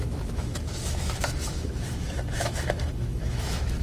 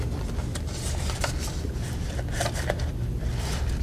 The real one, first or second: second